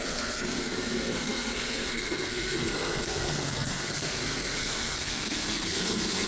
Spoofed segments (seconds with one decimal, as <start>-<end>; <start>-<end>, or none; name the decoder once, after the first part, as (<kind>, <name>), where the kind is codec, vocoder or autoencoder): 0.0-6.3 (codec, SNAC)